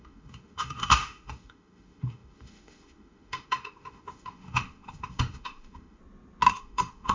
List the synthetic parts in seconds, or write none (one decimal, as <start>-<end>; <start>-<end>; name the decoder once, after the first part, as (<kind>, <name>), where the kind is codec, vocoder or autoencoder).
0.0-6.0 (autoencoder, DAC-VAE); 6.5-7.1